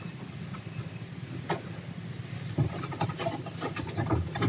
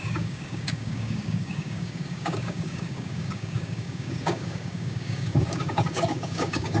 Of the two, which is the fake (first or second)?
second